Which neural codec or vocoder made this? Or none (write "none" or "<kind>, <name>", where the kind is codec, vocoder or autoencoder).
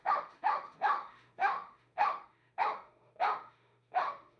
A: autoencoder, DAC-VAE